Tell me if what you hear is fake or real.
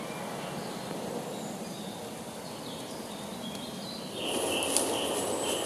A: real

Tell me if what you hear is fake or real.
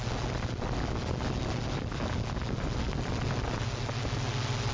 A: real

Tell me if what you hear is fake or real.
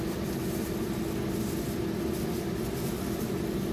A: real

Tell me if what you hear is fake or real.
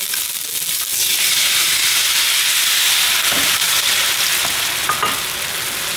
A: real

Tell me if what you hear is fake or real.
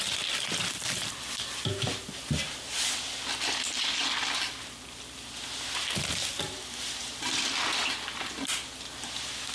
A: real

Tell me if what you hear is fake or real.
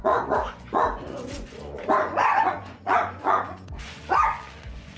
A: fake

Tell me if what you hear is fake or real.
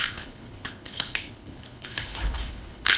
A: fake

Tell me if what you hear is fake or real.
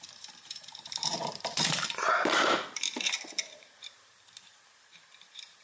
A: fake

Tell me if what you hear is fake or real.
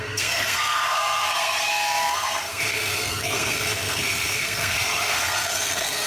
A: fake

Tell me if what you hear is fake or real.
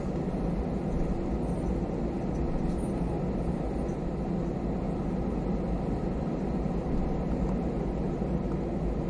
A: real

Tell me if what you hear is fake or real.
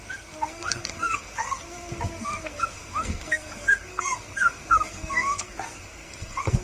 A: fake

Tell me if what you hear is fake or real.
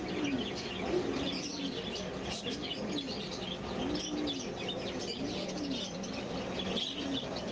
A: real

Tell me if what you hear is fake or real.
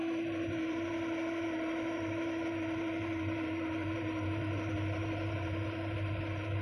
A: fake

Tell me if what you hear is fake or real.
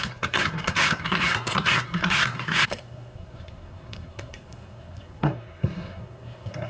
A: fake